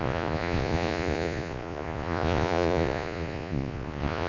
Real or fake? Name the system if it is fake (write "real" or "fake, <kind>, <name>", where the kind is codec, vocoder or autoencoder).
fake, vocoder, Vocos